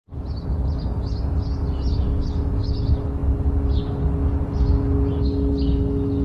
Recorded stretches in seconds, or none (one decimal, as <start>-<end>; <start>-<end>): 0.0-6.2